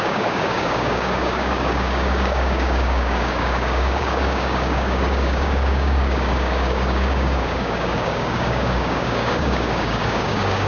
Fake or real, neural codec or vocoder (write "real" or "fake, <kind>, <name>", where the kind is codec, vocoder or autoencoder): fake, codec, DAC